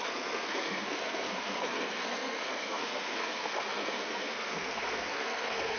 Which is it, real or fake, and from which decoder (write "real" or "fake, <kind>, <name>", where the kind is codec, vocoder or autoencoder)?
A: fake, codec, SNAC